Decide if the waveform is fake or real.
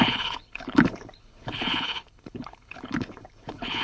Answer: fake